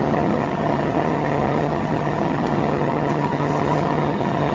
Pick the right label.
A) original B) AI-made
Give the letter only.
B